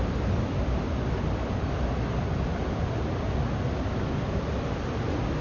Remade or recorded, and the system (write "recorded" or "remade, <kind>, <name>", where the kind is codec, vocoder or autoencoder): recorded